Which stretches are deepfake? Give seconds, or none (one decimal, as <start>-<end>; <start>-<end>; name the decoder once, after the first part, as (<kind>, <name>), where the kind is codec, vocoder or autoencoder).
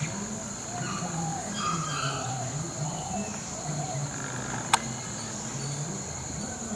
1.3-3.1 (vocoder, BigVGAN v2)